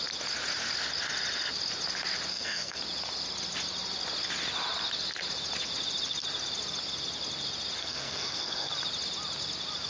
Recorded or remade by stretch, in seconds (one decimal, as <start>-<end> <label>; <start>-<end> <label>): 0.0-2.3 recorded; 2.3-2.8 remade; 2.8-7.8 recorded; 7.8-8.7 remade; 8.7-9.9 recorded